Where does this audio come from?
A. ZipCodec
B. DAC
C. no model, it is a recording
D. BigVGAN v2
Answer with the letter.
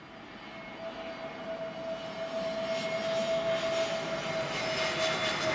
C